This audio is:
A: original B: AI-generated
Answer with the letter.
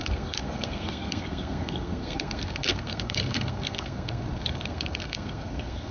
B